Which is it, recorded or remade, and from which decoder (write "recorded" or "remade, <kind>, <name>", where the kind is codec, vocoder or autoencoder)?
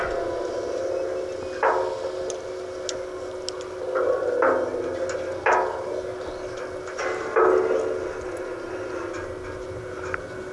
recorded